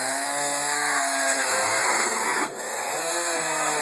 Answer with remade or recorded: remade